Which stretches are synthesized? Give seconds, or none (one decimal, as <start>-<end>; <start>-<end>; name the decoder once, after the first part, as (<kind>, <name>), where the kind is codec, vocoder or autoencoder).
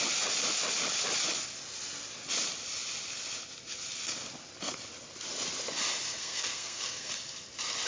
6.2-7.1 (codec, SNAC)